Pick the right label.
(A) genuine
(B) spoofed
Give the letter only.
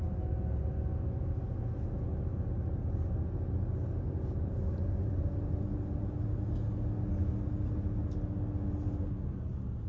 A